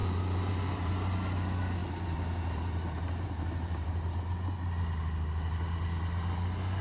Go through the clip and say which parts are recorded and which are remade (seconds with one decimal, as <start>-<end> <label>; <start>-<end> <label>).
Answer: 0.0-0.9 remade; 0.9-1.8 recorded; 1.8-3.9 remade; 3.9-6.8 recorded